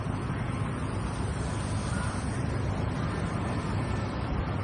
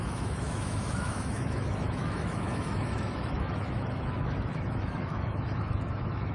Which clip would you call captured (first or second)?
first